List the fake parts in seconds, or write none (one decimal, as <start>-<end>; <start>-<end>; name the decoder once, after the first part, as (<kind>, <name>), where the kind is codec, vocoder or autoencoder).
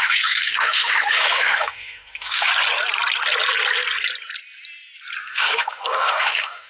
0.0-2.5 (autoencoder, DAC-VAE); 5.3-6.7